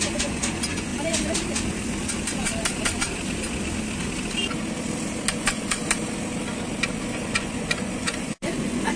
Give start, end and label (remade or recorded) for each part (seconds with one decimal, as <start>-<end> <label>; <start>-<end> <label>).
0.0-0.9 remade; 0.9-5.3 recorded; 5.3-5.8 remade; 5.8-7.1 recorded; 7.1-9.0 remade